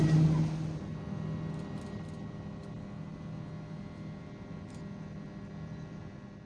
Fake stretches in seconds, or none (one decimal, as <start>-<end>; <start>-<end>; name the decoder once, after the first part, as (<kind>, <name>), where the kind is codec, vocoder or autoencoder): none

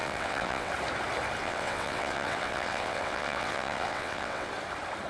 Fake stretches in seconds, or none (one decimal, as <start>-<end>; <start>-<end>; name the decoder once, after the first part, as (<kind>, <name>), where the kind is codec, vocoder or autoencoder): 0.0-0.7 (vocoder, WaveNeXt); 1.4-4.5

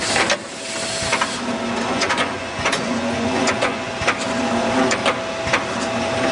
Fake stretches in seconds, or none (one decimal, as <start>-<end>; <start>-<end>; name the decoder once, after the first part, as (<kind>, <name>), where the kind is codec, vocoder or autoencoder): 1.9-3.9 (vocoder, Vocos)

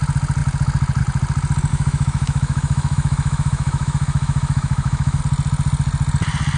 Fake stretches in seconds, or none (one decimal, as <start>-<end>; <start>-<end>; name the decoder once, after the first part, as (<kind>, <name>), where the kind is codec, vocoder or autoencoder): 1.7-5.2 (autoencoder, DAC-VAE)

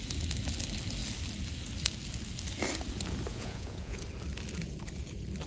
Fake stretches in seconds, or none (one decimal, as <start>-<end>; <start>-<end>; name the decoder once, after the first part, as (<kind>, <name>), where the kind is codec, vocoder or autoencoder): 3.3-4.0 (vocoder, Vocos)

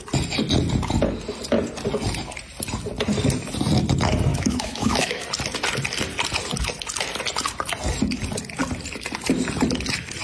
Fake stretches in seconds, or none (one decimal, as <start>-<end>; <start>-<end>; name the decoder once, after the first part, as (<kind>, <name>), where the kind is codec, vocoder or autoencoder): 4.3-5.2 (autoencoder, DAC-VAE)

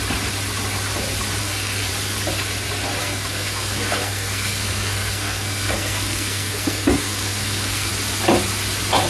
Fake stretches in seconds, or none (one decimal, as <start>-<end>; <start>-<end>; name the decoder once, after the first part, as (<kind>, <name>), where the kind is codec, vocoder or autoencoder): 1.4-1.9 (codec, SNAC); 3.0-7.9